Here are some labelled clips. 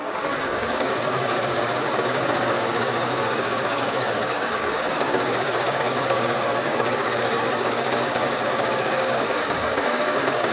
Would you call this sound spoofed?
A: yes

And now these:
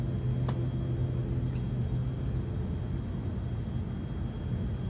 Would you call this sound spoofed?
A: no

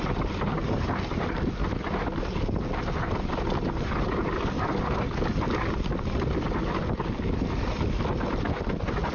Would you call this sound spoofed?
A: no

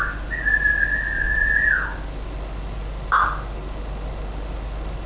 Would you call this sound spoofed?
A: no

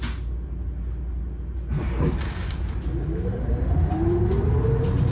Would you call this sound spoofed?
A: no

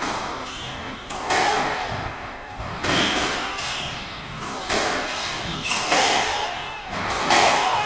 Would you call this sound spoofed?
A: yes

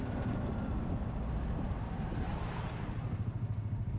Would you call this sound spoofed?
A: no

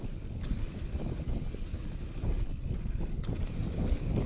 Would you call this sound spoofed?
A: no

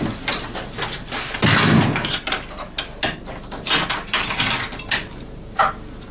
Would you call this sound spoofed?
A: no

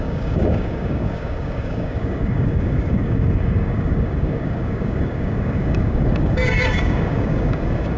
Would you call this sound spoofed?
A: yes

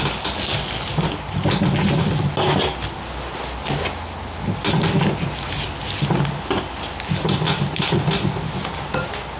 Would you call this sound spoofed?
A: no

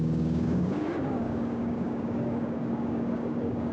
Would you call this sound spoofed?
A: yes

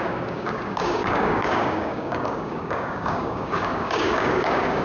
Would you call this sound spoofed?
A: yes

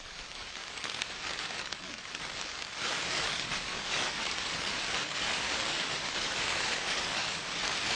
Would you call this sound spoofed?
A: yes